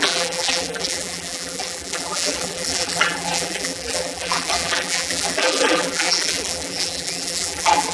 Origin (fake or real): fake